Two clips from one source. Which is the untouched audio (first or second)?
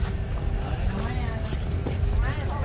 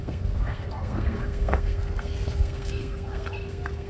first